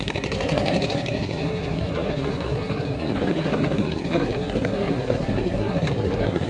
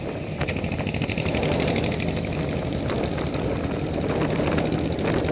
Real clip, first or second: second